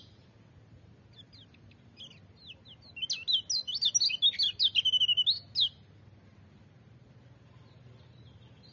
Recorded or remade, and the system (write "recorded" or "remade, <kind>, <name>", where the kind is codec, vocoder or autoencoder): recorded